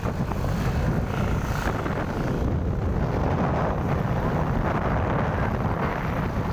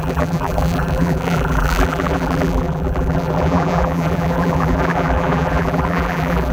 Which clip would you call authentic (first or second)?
first